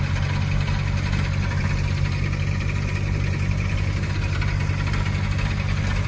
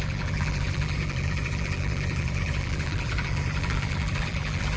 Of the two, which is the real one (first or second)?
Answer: first